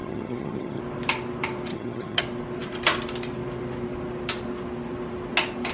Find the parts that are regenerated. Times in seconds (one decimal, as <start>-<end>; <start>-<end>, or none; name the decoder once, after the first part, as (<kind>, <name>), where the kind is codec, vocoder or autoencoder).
0.0-0.8 (vocoder, HiFi-GAN); 1.7-2.2